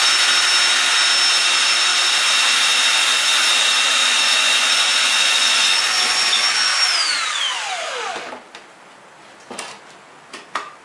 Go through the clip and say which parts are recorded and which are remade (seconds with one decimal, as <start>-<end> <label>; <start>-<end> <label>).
0.0-4.0 recorded; 4.0-6.8 remade; 6.8-10.8 recorded